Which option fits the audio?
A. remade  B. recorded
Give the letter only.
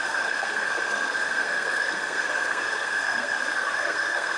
A